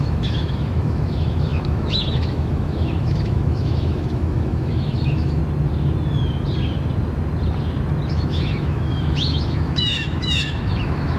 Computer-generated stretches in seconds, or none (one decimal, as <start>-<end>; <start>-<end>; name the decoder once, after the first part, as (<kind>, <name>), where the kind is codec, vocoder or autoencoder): 0.0-5.4 (autoencoder, DAC-VAE); 8.1-11.2